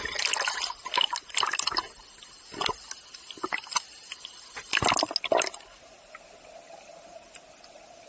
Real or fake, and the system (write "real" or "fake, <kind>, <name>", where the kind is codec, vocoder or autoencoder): real